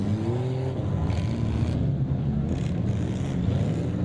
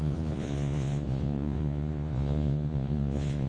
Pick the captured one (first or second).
first